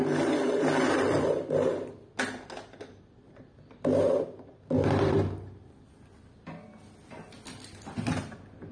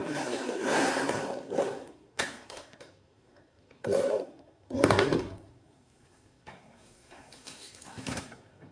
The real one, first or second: first